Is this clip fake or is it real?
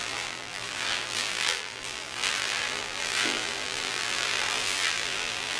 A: fake